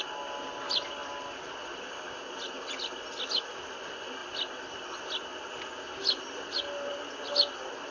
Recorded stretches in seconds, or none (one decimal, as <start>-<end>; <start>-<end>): 0.0-7.9

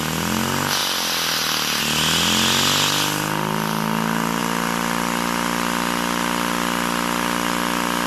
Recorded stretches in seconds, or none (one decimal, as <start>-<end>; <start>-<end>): 0.0-8.1

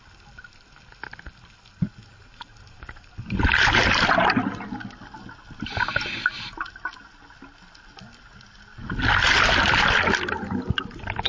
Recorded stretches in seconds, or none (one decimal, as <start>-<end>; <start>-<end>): 0.0-11.3

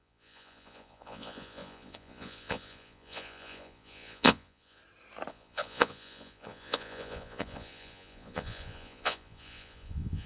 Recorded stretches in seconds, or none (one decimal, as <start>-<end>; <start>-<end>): 4.8-5.3

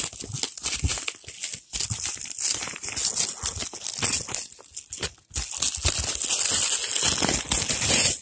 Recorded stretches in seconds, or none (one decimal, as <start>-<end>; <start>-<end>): 0.0-8.2

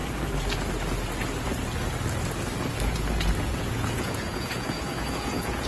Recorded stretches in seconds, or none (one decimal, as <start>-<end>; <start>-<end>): 0.0-3.4

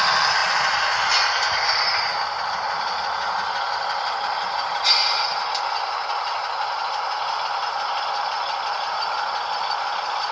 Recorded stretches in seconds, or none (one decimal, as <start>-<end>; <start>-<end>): 0.0-10.3